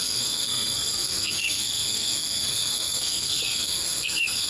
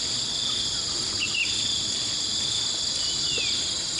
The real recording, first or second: second